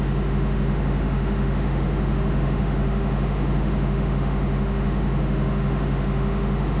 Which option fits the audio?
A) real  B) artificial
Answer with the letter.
B